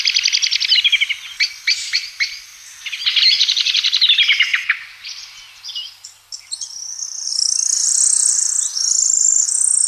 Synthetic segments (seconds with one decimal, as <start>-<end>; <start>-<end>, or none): 4.5-7.3